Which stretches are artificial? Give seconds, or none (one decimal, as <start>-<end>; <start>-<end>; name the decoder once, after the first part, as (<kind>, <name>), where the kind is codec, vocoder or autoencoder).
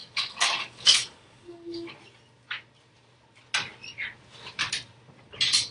0.0-1.9 (codec, DAC)